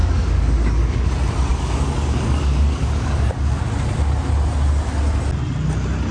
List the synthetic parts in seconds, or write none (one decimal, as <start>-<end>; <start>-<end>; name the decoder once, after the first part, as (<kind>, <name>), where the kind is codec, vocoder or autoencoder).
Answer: 0.0-1.1 (codec, DAC); 1.5-3.6